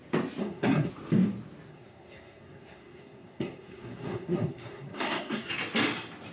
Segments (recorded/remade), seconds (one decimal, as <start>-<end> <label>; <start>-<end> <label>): 0.0-0.4 recorded; 0.4-0.9 remade; 0.9-1.7 recorded; 1.7-5.5 remade; 5.5-6.3 recorded